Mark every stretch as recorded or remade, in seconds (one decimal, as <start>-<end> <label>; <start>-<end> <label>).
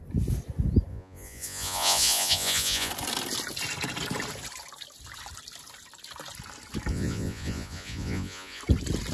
0.0-0.9 recorded; 0.9-2.9 remade; 2.9-6.9 recorded; 6.9-8.6 remade; 8.6-9.1 recorded